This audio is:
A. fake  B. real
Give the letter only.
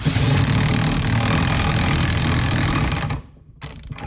B